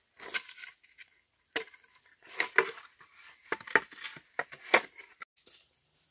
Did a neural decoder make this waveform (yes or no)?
no